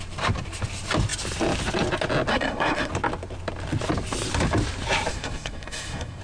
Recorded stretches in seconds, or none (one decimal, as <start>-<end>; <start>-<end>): 0.0-2.3; 2.9-5.1